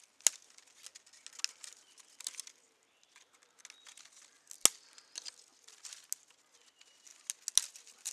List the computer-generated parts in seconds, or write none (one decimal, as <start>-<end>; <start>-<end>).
none